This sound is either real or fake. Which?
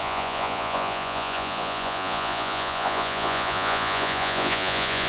fake